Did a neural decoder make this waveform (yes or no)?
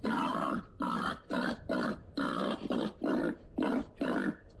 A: no